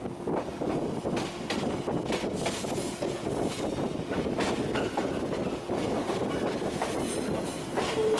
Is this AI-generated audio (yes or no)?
no